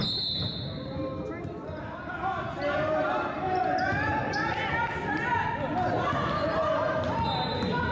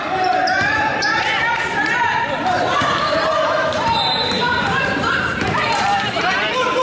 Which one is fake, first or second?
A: second